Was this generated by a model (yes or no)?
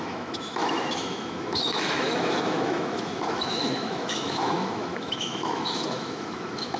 yes